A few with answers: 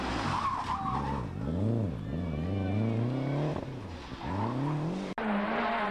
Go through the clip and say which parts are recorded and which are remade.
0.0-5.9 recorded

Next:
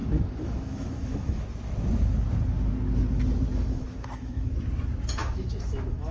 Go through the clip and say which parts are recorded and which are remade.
0.0-1.4 remade; 1.4-3.5 recorded; 3.5-4.5 remade; 4.5-5.2 recorded; 5.2-6.1 remade

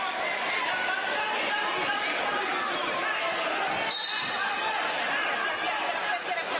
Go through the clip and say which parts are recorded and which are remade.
0.0-6.6 recorded

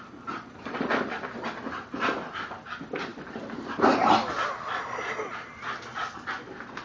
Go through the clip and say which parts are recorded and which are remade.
0.0-6.8 recorded

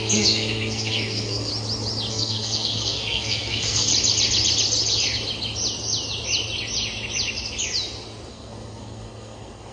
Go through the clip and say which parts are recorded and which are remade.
0.0-1.5 remade; 1.5-2.1 recorded; 2.1-3.9 remade; 3.9-8.3 recorded; 8.3-9.7 remade

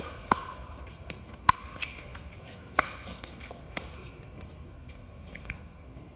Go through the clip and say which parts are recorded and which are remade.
0.0-6.2 remade

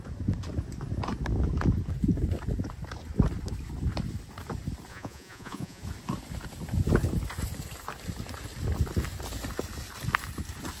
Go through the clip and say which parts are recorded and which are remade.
0.0-4.9 recorded; 4.9-5.8 remade; 5.8-10.8 recorded

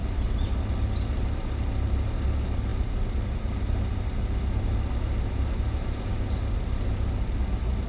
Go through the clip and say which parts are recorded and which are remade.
0.0-7.9 recorded